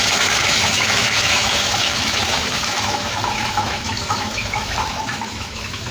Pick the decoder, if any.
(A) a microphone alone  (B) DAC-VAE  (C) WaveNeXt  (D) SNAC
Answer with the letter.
B